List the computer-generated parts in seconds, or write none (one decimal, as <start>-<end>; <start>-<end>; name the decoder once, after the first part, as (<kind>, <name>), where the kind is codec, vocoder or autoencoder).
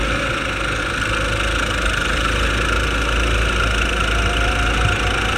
none